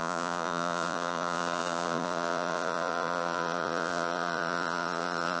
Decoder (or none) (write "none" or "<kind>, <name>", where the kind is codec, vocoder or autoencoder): vocoder, Vocos